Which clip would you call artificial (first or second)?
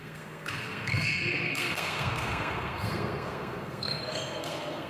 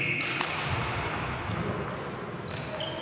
first